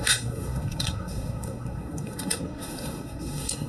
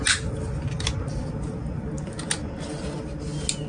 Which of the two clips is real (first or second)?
second